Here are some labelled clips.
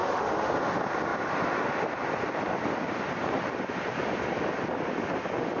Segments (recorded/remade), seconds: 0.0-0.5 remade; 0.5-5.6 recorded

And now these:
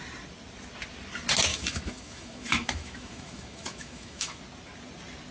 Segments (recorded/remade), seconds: 0.0-1.5 recorded; 1.5-4.4 remade; 4.4-5.3 recorded

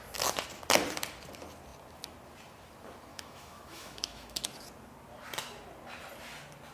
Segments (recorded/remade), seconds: 0.0-3.1 recorded; 3.1-4.4 remade; 4.4-6.7 recorded

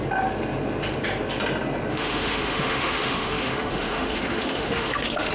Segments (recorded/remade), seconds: 0.0-1.9 recorded; 1.9-5.3 remade

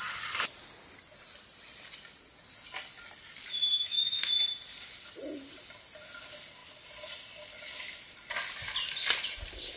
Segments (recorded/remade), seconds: 0.0-3.7 recorded; 3.7-4.3 remade; 4.3-9.8 recorded

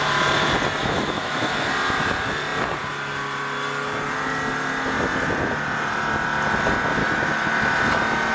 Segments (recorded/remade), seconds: 0.0-0.8 recorded; 0.8-1.5 remade; 1.5-7.0 recorded; 7.0-7.5 remade; 7.5-8.3 recorded